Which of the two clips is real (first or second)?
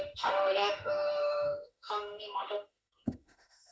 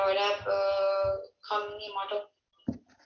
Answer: second